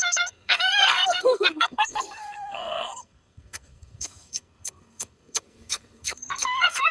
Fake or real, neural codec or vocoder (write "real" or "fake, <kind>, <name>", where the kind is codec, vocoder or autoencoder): fake, codec, SNAC